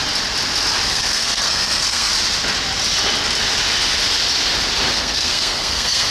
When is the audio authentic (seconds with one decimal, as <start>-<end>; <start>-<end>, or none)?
0.0-0.9; 2.1-4.9